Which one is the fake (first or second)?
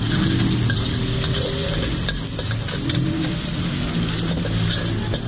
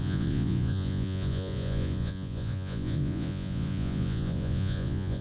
second